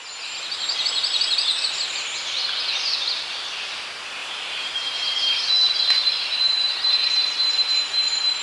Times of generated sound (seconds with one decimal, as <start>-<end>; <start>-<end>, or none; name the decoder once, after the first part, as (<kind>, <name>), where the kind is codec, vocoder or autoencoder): 4.2-5.5 (vocoder, BigVGAN v2)